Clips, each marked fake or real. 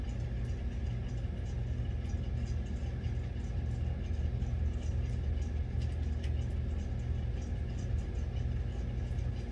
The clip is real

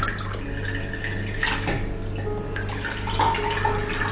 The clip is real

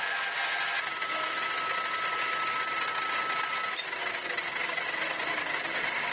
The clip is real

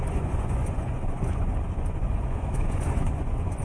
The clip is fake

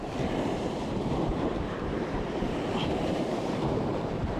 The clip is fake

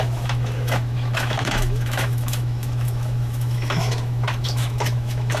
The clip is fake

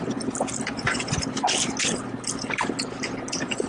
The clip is real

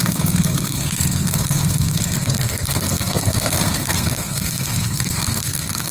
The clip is fake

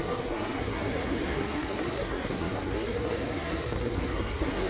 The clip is fake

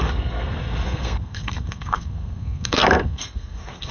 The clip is fake